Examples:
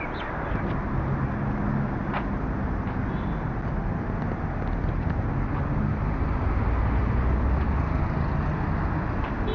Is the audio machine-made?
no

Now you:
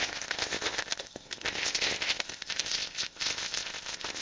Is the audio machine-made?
yes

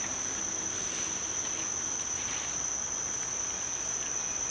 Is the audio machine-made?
no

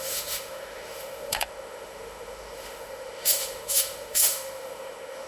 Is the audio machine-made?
yes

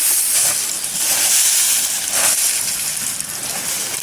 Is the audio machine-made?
no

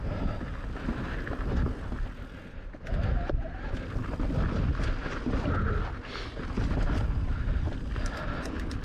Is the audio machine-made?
no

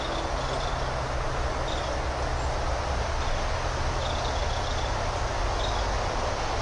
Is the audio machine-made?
no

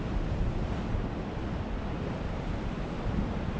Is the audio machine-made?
no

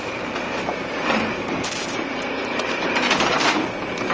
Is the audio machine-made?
yes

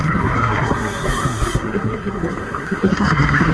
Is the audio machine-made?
yes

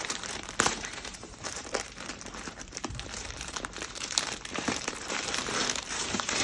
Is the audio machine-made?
yes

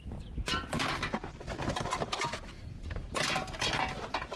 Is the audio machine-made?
no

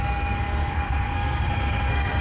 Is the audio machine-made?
yes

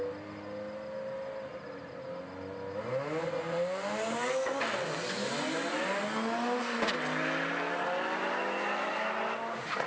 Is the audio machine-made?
no